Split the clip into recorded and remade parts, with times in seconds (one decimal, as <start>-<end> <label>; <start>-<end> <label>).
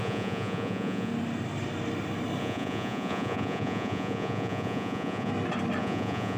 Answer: 0.0-1.1 remade; 1.1-2.4 recorded; 2.4-5.3 remade; 5.3-5.8 recorded; 5.8-6.4 remade